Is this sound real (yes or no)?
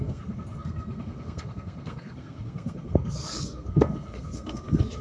no